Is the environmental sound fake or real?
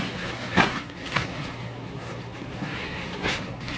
fake